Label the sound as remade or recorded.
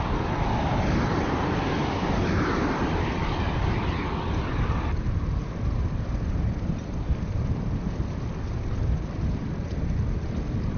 remade